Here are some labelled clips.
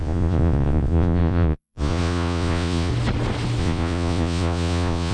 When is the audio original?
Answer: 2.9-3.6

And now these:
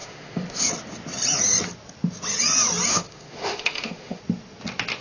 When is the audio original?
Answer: 0.7-2.9; 4.2-5.0

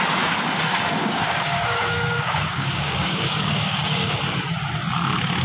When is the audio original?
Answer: 0.0-1.0; 4.2-5.4

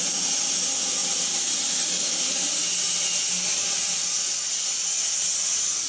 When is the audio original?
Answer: 0.0-5.9